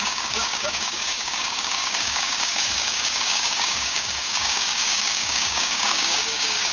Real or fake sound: fake